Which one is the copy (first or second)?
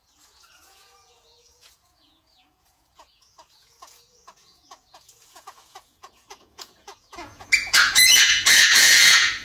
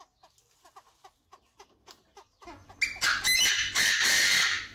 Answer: first